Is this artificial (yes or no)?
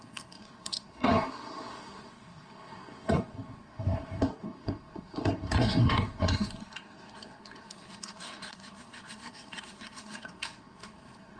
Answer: yes